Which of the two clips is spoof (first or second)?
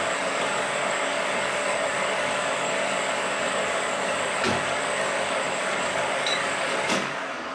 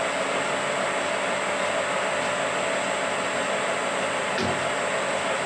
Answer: first